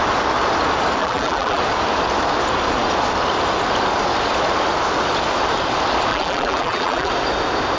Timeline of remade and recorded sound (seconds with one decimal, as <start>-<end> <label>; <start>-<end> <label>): 0.0-1.0 recorded; 1.0-1.6 remade; 1.6-6.1 recorded; 6.1-7.1 remade; 7.1-7.8 recorded